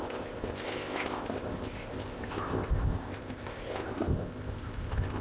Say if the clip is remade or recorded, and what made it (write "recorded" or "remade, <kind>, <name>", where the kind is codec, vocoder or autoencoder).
remade, codec, ZipCodec